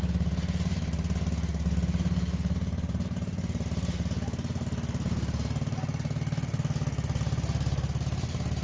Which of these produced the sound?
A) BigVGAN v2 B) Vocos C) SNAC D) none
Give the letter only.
D